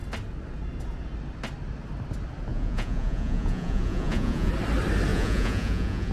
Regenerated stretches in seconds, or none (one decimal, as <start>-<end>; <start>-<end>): 2.5-4.5; 5.1-6.1